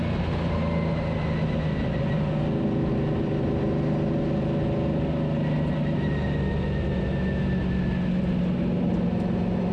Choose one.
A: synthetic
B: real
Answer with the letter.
B